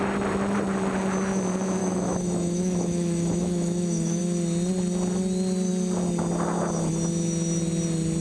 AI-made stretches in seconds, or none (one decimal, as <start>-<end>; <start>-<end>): 1.8-4.2